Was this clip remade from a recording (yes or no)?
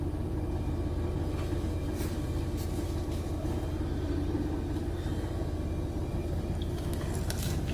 no